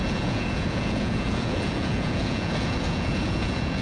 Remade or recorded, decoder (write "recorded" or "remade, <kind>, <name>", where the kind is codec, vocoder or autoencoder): remade, vocoder, Vocos